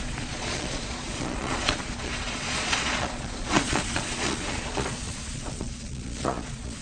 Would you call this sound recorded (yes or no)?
no